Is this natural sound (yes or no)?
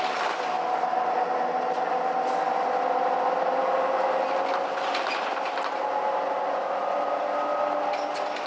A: yes